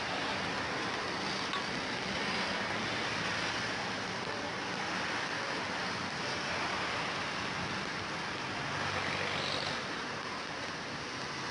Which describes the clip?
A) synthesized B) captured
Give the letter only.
B